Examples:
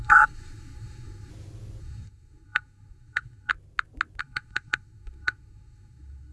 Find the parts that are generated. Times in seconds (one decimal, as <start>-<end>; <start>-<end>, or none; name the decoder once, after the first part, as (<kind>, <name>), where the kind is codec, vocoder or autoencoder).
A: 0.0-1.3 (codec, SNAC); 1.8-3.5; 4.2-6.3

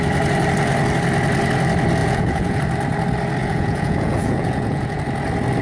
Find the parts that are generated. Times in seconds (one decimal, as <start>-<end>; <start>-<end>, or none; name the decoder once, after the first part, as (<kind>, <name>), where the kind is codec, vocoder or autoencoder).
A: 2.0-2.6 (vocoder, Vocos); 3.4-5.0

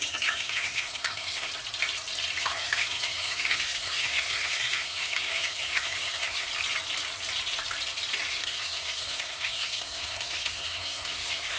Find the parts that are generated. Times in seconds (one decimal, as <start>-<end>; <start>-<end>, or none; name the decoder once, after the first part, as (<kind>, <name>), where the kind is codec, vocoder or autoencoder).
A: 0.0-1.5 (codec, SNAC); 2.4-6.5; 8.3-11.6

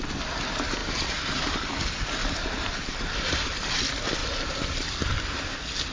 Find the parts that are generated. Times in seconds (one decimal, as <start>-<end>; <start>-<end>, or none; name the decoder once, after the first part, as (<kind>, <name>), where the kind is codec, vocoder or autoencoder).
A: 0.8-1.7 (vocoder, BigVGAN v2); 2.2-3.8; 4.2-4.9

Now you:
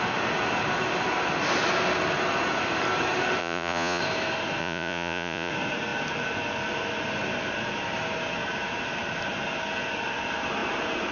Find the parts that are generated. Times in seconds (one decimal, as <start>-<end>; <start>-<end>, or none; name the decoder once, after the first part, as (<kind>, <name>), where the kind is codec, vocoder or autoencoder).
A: 3.4-4.0 (vocoder, Vocos); 4.6-5.5

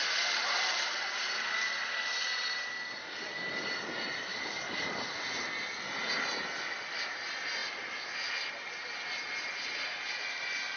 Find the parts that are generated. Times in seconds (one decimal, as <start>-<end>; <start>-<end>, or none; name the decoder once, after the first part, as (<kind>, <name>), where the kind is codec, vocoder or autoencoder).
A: none

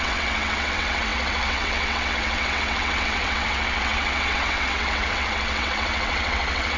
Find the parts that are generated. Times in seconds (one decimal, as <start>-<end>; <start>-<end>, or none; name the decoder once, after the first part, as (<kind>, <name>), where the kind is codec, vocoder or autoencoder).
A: 0.0-6.8 (vocoder, WaveNeXt)